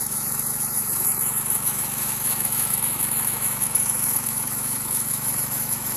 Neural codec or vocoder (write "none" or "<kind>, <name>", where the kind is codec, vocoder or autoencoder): autoencoder, DAC-VAE